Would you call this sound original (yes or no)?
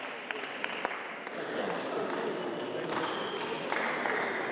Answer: yes